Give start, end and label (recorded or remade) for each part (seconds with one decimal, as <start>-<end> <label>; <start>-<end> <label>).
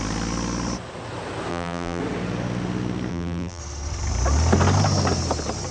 0.0-1.5 recorded; 1.5-2.0 remade; 2.0-3.1 recorded; 3.1-3.6 remade; 3.6-5.7 recorded